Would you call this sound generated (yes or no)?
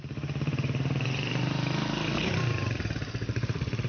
yes